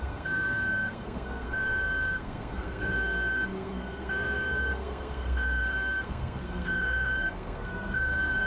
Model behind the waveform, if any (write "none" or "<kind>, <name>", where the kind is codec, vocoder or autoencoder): codec, SNAC